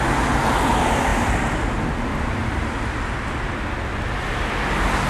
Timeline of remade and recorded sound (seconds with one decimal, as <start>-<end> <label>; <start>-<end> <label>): 0.0-5.1 recorded